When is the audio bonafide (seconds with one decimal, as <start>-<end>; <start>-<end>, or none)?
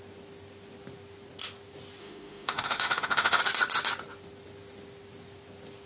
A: 0.0-2.0; 3.4-5.9